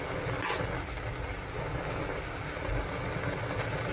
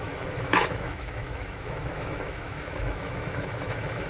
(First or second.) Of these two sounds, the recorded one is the first